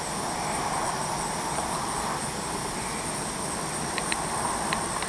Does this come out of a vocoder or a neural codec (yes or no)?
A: no